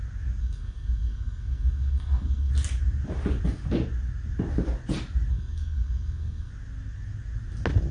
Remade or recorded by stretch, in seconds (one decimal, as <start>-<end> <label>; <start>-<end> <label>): 0.0-0.4 recorded; 0.4-2.5 remade; 2.5-5.3 recorded; 5.3-6.5 remade; 6.5-7.9 recorded